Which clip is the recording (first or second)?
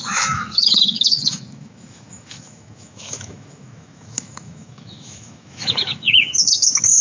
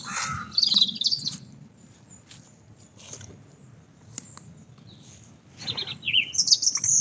second